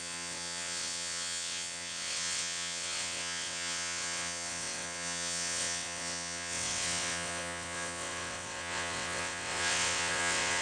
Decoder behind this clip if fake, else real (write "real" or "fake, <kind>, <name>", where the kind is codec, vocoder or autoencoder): fake, vocoder, WaveNeXt